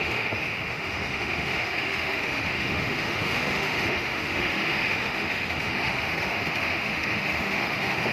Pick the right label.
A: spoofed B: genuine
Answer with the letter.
A